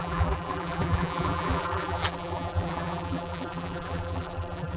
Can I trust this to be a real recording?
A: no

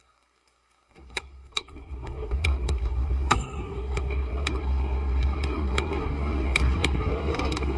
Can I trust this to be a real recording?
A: no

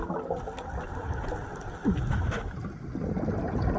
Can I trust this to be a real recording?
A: yes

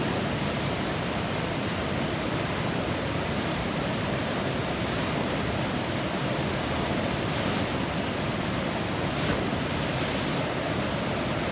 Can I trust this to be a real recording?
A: yes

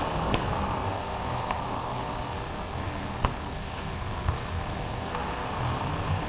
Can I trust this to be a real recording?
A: no